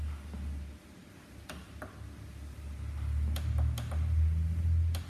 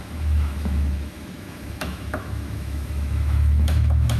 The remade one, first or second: second